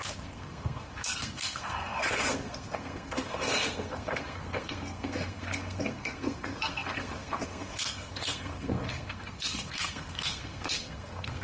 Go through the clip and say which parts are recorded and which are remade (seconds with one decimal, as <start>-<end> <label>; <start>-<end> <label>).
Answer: 0.0-11.4 remade